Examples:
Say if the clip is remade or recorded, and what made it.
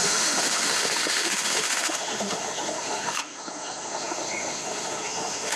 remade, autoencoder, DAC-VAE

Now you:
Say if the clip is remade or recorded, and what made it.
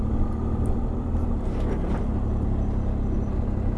recorded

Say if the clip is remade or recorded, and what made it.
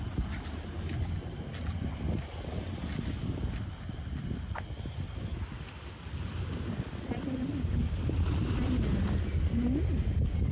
recorded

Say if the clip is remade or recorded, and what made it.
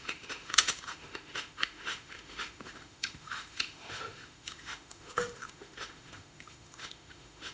remade, autoencoder, DAC-VAE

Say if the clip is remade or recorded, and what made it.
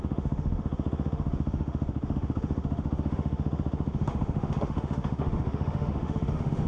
remade, autoencoder, DAC-VAE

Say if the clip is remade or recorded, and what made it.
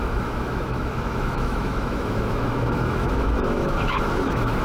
remade, autoencoder, DAC-VAE